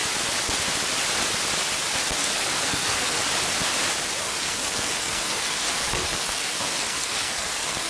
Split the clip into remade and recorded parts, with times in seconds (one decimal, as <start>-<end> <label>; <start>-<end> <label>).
0.0-2.2 recorded; 2.2-3.2 remade; 3.2-4.2 recorded; 4.2-7.9 remade